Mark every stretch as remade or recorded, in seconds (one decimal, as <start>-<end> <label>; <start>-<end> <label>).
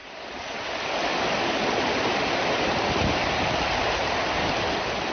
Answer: 0.0-5.1 recorded